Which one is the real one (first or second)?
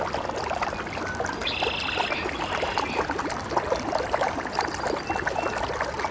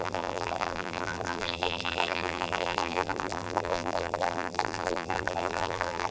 first